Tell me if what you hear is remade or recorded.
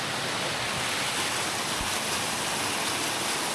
recorded